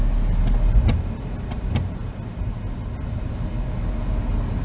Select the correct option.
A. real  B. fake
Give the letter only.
A